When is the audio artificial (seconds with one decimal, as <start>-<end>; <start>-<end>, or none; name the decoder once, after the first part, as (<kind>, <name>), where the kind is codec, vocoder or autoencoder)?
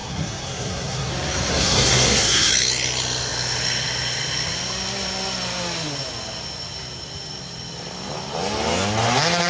0.0-1.1 (codec, SNAC); 1.5-2.5